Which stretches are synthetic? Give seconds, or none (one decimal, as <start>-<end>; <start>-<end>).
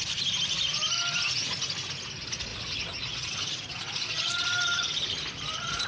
2.5-4.3